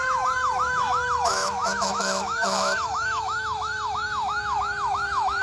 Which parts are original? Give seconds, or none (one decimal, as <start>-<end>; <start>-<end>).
none